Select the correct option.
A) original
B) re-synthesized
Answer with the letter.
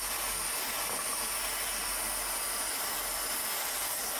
A